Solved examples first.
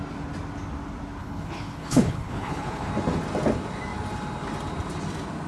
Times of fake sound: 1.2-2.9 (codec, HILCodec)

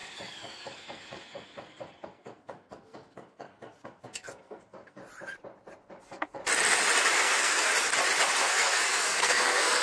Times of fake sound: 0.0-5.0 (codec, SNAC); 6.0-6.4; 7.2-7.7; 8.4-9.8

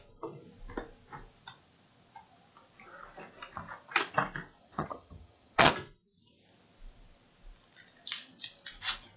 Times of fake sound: 4.6-5.7 (vocoder, HiFi-GAN)

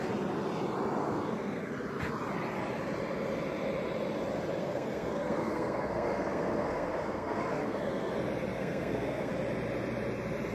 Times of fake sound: 1.0-1.7 (codec, SNAC); 4.6-8.1; 8.5-9.3

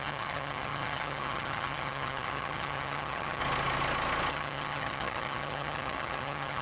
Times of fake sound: 0.0-3.4 (vocoder, HiFi-GAN); 4.3-6.6

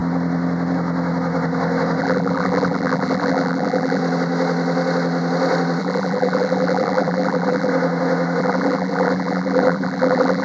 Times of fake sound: 2.0-4.0 (vocoder, BigVGAN v2); 5.8-7.7; 8.4-10.4

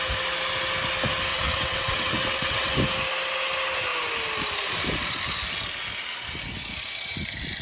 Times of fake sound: 1.3-2.7 (vocoder, WaveNeXt)

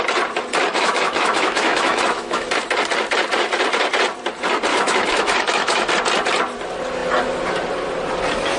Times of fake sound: 0.7-2.5 (autoencoder, DAC-VAE); 4.7-5.9